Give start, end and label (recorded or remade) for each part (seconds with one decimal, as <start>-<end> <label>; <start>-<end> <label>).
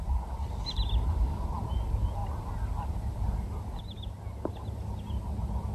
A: 0.0-5.7 recorded